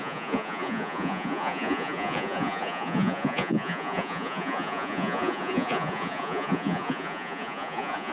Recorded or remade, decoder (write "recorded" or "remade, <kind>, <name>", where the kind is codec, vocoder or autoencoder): remade, vocoder, Vocos